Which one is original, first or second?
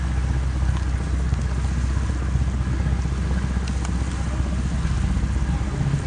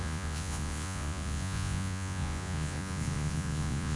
first